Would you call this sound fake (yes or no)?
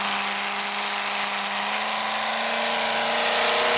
no